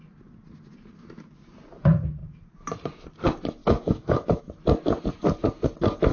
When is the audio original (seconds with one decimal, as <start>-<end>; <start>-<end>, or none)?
0.0-3.6; 4.4-6.1